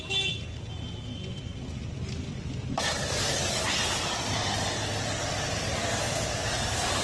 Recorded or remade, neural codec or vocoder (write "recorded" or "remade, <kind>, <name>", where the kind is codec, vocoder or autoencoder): recorded